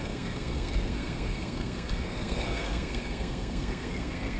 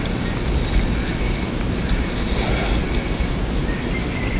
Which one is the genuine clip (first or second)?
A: second